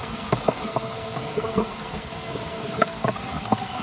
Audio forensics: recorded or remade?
remade